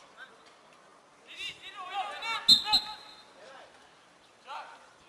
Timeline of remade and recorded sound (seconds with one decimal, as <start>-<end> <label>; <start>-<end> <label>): 0.0-0.9 remade; 0.9-4.0 recorded; 4.0-5.1 remade